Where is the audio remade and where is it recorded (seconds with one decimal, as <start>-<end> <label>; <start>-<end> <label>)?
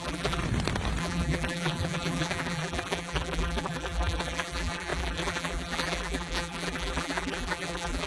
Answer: 0.0-0.4 remade; 0.4-1.0 recorded; 1.0-8.1 remade